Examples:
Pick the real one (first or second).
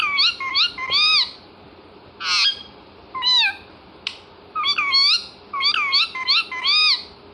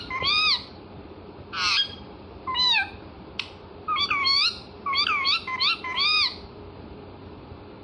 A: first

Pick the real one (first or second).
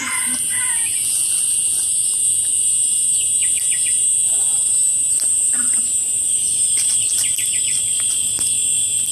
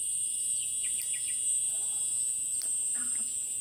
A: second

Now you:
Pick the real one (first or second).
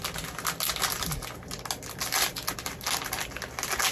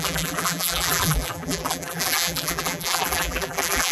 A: first